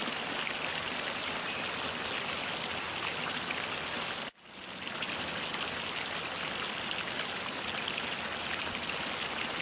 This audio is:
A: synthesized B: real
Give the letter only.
B